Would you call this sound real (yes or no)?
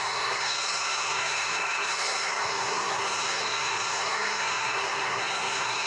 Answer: no